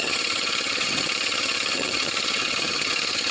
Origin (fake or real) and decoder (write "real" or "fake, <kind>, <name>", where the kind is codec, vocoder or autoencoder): fake, vocoder, HiFi-GAN